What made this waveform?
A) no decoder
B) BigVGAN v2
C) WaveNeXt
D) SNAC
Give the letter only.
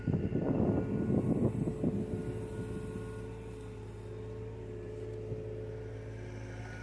A